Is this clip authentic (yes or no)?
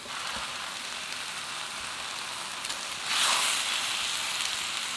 yes